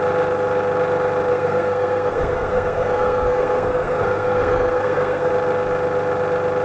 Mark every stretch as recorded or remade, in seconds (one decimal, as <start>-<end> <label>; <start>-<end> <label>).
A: 0.0-1.3 recorded; 1.3-5.3 remade; 5.3-6.6 recorded